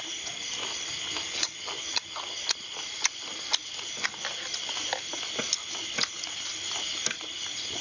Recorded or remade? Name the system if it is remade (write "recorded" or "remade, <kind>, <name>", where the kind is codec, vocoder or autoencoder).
recorded